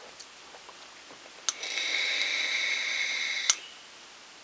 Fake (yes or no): no